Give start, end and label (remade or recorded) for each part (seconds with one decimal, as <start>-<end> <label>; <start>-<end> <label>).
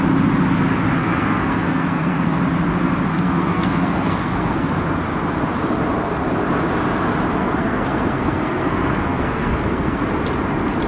0.0-1.0 recorded; 1.0-2.4 remade; 2.4-3.1 recorded; 3.1-4.7 remade; 4.7-7.4 recorded; 7.4-10.0 remade; 10.0-10.9 recorded